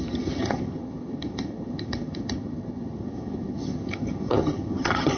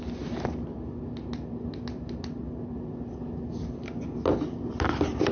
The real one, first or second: second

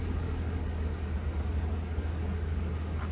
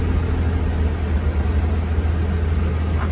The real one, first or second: second